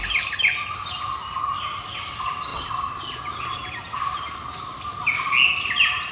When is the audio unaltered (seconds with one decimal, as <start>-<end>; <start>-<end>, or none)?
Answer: 0.0-6.1